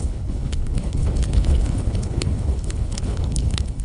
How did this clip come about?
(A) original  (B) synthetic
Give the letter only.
B